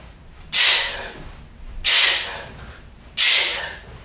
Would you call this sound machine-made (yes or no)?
no